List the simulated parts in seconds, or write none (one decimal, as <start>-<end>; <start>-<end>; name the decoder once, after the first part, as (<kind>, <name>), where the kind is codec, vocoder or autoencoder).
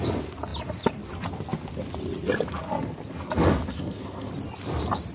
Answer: 3.7-4.3 (codec, SNAC)